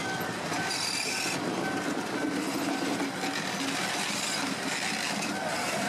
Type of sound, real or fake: real